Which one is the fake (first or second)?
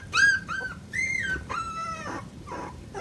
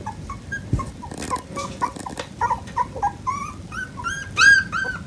first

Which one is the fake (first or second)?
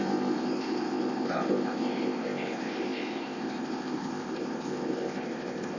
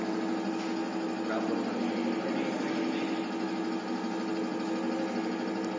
first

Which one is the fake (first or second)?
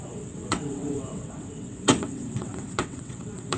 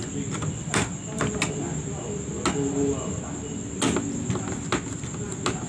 first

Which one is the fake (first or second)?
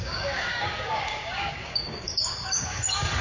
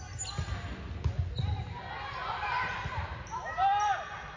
first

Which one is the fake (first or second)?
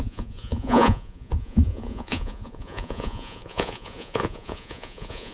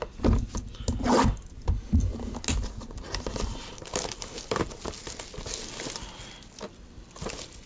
first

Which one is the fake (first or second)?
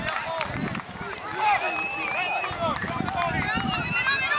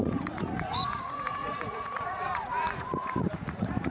second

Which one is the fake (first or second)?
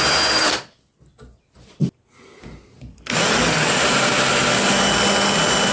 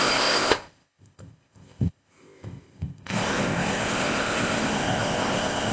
second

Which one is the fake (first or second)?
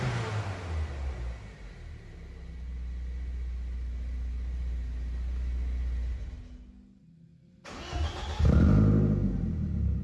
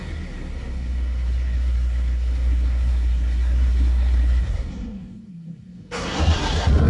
second